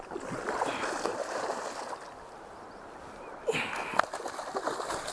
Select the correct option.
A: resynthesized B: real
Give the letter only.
B